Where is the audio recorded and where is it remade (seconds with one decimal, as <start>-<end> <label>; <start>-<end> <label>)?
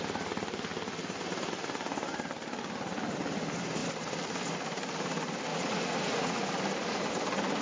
0.0-5.5 recorded; 5.5-6.4 remade; 6.4-7.6 recorded